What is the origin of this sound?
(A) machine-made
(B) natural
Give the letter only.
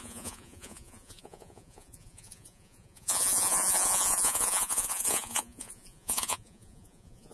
A